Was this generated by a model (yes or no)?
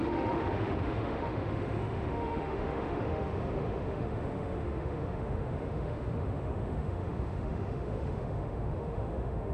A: yes